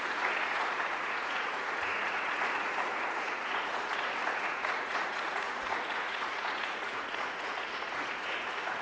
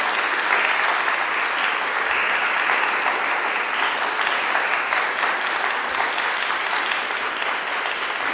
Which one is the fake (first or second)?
first